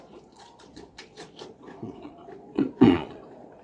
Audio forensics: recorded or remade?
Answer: remade